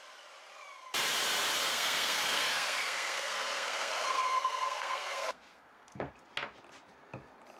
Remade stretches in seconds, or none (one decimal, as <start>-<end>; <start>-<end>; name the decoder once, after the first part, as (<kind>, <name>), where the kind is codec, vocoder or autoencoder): 1.7-6.1 (codec, SNAC)